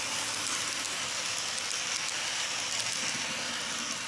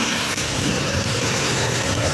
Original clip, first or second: first